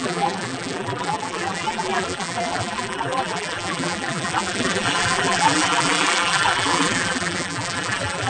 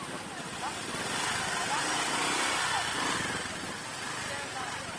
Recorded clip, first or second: second